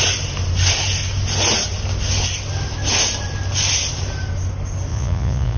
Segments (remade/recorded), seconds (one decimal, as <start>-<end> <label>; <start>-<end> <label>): 0.0-4.9 recorded; 4.9-5.6 remade